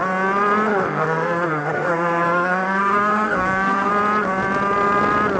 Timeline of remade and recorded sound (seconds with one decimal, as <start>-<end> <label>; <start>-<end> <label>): 0.0-0.7 recorded; 0.7-3.9 remade; 3.9-5.4 recorded